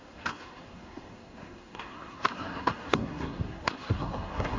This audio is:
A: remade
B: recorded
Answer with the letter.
A